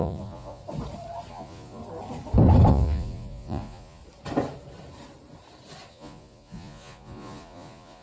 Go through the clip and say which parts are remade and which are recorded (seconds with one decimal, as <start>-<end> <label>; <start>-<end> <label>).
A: 0.0-0.6 remade; 0.6-1.3 recorded; 1.3-1.8 remade; 1.8-2.7 recorded; 2.7-4.0 remade; 4.0-5.9 recorded; 5.9-8.0 remade